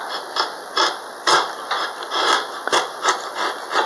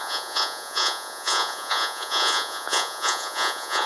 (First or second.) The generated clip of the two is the second